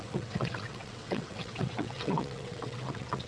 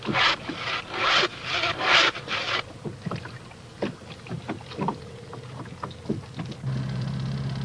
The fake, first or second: first